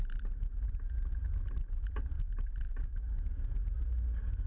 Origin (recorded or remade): recorded